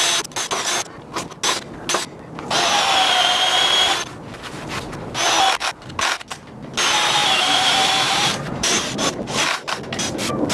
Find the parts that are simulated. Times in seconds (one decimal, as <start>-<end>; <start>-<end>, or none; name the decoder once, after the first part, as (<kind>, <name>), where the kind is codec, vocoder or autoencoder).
7.2-9.2 (vocoder, BigVGAN v2)